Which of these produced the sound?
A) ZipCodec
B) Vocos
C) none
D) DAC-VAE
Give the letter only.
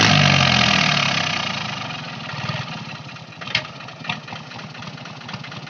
C